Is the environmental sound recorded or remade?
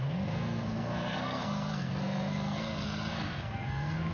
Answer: remade